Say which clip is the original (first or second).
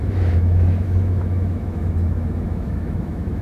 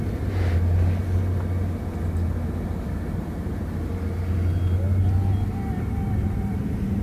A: second